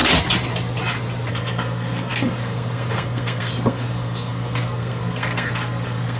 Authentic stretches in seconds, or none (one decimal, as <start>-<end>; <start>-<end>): 0.0-1.3